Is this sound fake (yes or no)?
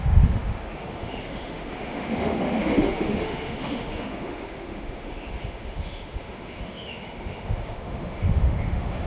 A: yes